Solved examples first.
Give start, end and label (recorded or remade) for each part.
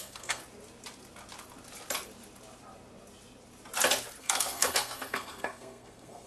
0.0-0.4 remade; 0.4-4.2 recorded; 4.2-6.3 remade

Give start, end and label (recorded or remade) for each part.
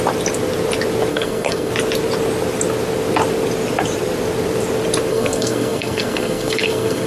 0.0-1.1 recorded; 1.1-1.7 remade; 1.7-5.1 recorded; 5.1-7.1 remade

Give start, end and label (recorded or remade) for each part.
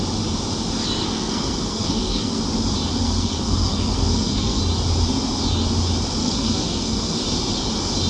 0.0-1.0 recorded; 1.0-2.4 remade; 2.4-3.0 recorded; 3.0-4.6 remade; 4.6-6.2 recorded; 6.2-7.2 remade; 7.2-8.1 recorded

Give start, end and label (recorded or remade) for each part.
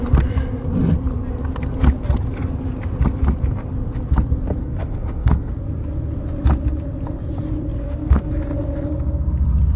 0.0-4.6 recorded; 4.6-5.5 remade; 5.5-7.8 recorded; 7.8-8.3 remade; 8.3-9.8 recorded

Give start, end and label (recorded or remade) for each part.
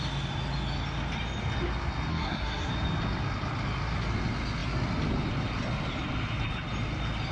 0.0-2.1 recorded; 2.1-2.7 remade; 2.7-7.3 recorded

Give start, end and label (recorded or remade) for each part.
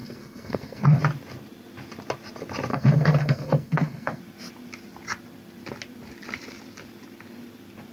0.0-1.0 remade; 1.0-2.7 recorded; 2.7-4.2 remade; 4.2-7.9 recorded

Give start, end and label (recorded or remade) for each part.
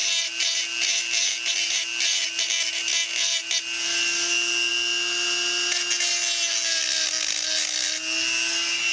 0.0-8.9 recorded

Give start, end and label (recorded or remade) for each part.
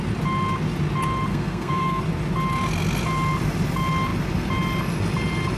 0.0-1.3 recorded; 1.3-2.0 remade; 2.0-5.6 recorded